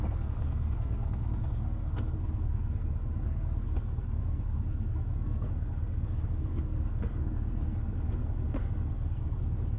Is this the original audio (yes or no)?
no